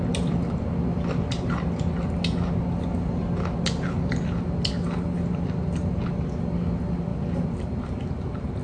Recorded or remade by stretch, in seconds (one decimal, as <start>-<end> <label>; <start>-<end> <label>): 0.0-8.6 recorded